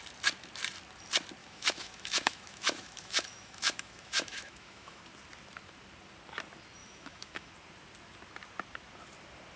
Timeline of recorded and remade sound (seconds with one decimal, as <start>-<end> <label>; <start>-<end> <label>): 0.0-1.4 recorded; 1.4-5.0 remade; 5.0-6.8 recorded; 6.8-7.5 remade; 7.5-9.6 recorded